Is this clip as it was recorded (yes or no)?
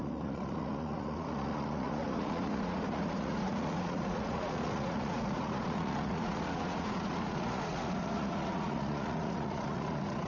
no